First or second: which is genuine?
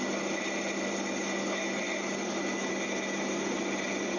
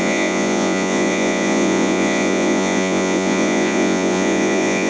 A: first